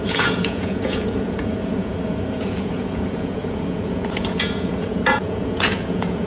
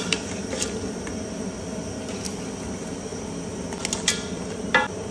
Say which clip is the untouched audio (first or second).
second